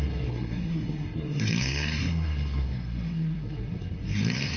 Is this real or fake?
fake